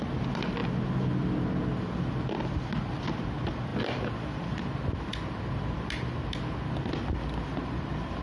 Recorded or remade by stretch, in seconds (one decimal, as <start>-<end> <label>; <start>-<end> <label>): 0.0-8.2 recorded